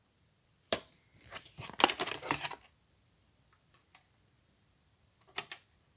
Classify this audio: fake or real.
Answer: fake